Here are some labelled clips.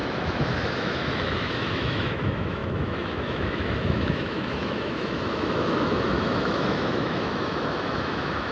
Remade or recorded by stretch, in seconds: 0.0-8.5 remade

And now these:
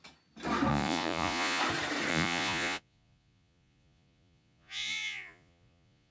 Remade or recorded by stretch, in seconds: 0.0-0.7 recorded; 0.7-1.6 remade; 1.6-2.1 recorded; 2.1-6.1 remade

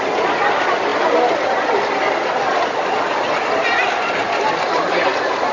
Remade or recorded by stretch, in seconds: 0.0-5.5 recorded

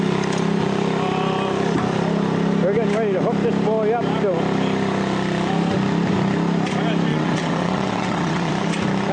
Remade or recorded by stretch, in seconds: 0.0-7.1 recorded; 7.1-8.5 remade; 8.5-9.1 recorded

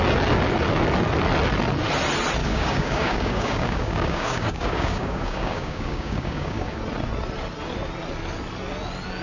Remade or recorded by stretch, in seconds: 0.0-2.4 recorded; 2.4-6.8 remade; 6.8-9.2 recorded